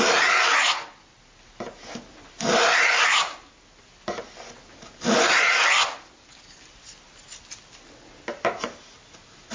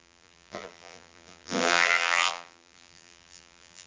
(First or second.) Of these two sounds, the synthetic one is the second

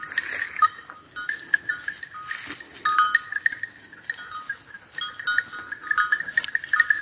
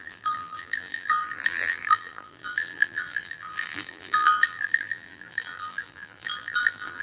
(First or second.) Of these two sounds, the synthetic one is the second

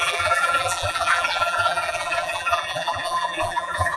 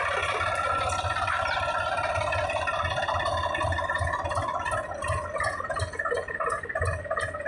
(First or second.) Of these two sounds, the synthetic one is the first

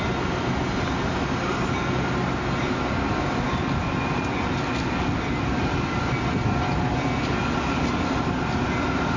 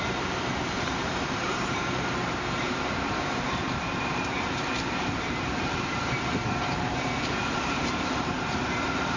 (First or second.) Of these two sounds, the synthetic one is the second